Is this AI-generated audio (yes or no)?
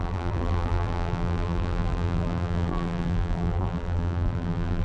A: yes